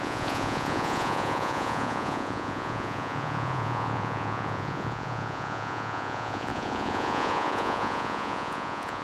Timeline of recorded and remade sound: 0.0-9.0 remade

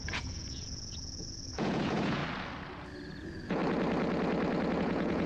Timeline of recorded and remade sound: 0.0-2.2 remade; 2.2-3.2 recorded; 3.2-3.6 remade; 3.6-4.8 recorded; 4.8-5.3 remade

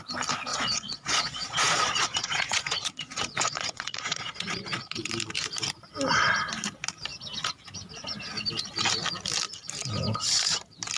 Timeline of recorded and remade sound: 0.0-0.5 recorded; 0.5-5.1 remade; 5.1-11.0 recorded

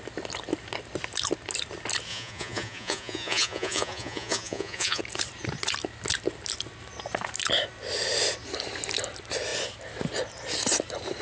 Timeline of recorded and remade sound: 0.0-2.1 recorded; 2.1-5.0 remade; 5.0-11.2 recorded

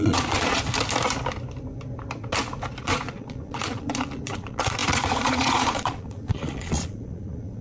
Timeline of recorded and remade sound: 0.0-0.6 remade; 0.6-2.8 recorded; 2.8-7.6 remade